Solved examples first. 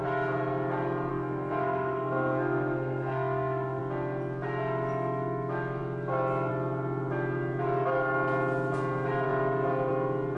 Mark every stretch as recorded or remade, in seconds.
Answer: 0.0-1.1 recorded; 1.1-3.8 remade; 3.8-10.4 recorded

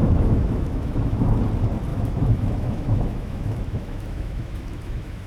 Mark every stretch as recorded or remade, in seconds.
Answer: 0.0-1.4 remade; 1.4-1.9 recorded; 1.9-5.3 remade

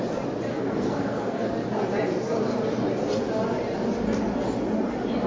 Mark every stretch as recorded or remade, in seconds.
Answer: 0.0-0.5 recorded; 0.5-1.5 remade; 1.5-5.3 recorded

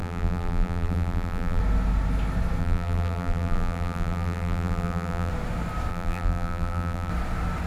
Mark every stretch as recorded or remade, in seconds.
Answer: 0.0-1.6 remade; 1.6-2.6 recorded; 2.6-5.3 remade; 5.3-5.9 recorded; 5.9-7.1 remade; 7.1-7.7 recorded

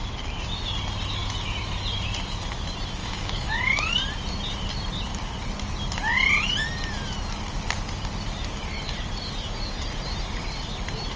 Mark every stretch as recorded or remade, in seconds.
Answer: 0.0-3.0 recorded; 3.0-3.5 remade; 3.5-11.2 recorded

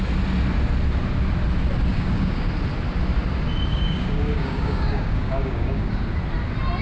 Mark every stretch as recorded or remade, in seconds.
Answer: 0.0-1.9 recorded; 1.9-2.5 remade; 2.5-3.7 recorded; 3.7-5.9 remade; 5.9-6.8 recorded

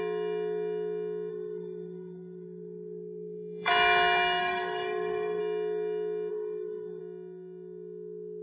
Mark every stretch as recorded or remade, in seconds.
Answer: 0.0-1.3 recorded; 1.3-3.7 remade; 3.7-4.4 recorded; 4.4-5.4 remade; 5.4-6.3 recorded; 6.3-7.0 remade; 7.0-8.4 recorded